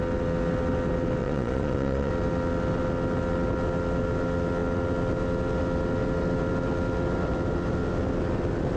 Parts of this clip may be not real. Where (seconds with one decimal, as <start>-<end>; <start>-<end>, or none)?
1.2-2.1